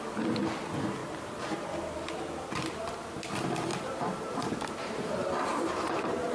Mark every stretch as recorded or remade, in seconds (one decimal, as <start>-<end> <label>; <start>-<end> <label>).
0.0-1.0 recorded; 1.0-1.7 remade; 1.7-3.7 recorded; 3.7-6.3 remade

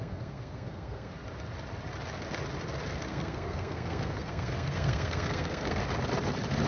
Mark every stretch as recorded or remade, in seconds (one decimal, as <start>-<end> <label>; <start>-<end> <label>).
0.0-1.1 remade; 1.1-3.1 recorded; 3.1-5.8 remade; 5.8-6.7 recorded